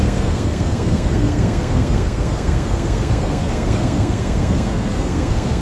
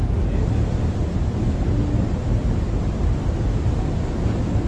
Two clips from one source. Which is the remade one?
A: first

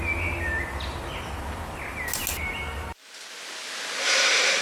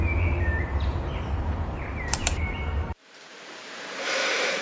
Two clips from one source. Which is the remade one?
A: second